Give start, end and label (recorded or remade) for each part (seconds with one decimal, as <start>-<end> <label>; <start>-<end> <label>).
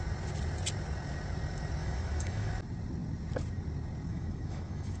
0.0-1.8 recorded; 1.8-2.5 remade; 2.5-4.1 recorded; 4.1-5.0 remade